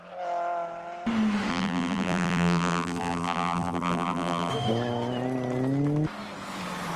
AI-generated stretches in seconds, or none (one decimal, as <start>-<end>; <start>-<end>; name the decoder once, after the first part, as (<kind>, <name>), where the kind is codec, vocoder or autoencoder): 1.5-4.5 (vocoder, BigVGAN v2)